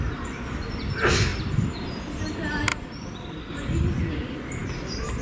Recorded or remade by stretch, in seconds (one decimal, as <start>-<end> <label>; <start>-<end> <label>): 0.0-1.3 recorded; 1.3-2.3 remade; 2.3-2.7 recorded; 2.7-3.5 remade; 3.5-5.2 recorded